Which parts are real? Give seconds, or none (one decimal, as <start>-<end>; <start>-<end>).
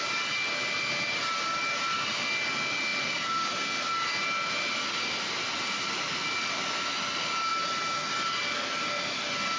0.0-9.6